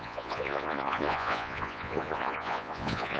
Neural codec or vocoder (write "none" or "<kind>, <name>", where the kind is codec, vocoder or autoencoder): vocoder, Vocos